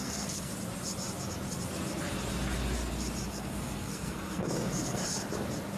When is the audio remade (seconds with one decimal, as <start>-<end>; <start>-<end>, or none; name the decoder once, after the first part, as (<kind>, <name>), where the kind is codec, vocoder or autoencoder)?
0.0-0.5 (codec, SNAC); 3.3-5.0